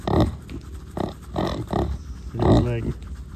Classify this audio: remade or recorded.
recorded